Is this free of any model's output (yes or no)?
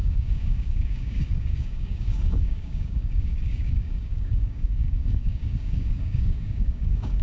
no